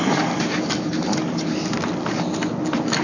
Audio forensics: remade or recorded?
recorded